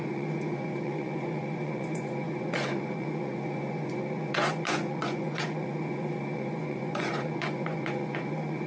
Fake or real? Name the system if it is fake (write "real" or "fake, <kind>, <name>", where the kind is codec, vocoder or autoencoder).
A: fake, vocoder, Vocos